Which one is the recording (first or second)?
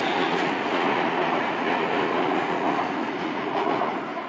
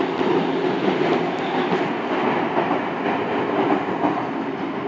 second